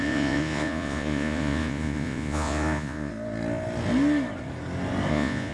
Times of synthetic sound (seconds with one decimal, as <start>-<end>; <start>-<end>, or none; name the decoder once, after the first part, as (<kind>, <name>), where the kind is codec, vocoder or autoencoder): 0.0-3.1 (vocoder, Vocos); 5.1-5.5